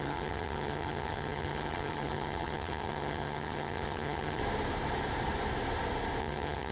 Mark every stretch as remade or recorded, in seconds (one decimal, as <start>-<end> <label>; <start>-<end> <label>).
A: 0.0-4.4 remade; 4.4-6.2 recorded; 6.2-6.7 remade